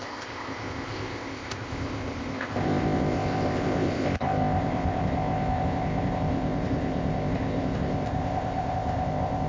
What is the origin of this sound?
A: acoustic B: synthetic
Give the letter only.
B